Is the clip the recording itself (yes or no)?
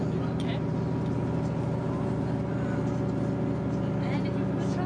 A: yes